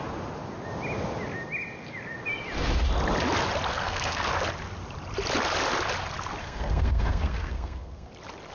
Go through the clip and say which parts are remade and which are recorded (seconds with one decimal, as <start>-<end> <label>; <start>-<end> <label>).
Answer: 0.0-3.7 recorded; 3.7-4.3 remade; 4.3-6.4 recorded; 6.4-8.1 remade; 8.1-8.5 recorded